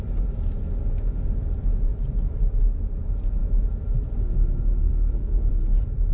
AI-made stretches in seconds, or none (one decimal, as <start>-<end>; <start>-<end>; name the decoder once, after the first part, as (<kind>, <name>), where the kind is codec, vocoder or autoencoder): 4.9-5.5 (codec, SNAC)